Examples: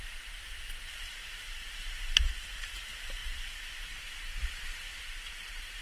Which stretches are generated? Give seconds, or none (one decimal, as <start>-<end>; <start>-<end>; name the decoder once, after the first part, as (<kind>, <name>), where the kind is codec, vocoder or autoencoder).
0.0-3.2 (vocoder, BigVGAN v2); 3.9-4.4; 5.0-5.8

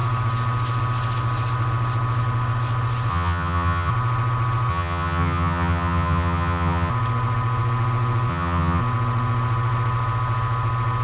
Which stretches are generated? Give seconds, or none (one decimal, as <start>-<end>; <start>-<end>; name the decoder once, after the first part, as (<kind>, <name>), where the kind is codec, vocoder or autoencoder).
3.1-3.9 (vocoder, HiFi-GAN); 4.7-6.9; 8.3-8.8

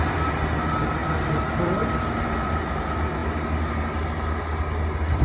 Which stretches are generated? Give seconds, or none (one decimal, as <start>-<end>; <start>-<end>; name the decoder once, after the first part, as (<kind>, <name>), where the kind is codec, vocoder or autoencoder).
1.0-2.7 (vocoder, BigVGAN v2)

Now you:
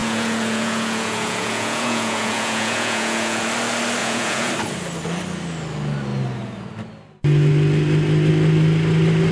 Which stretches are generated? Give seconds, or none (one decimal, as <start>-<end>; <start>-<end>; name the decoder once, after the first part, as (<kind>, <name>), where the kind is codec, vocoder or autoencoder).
0.0-3.4 (vocoder, Vocos); 4.0-4.5

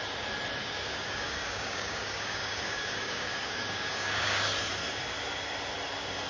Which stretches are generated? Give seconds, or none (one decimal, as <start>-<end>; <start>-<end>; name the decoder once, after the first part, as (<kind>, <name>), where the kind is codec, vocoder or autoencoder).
0.6-4.4 (codec, DAC)

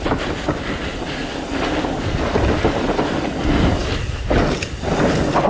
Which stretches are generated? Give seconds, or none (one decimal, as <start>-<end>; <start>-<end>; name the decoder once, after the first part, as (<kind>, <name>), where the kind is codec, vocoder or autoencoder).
none

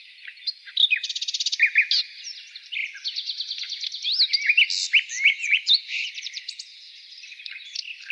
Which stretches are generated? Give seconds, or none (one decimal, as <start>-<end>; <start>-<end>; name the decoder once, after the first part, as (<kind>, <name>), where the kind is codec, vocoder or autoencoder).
5.4-7.0 (vocoder, Vocos)